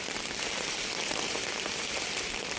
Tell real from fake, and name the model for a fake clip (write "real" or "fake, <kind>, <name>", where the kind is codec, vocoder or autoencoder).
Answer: real